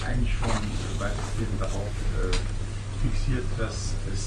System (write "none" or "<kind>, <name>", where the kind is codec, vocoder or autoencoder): none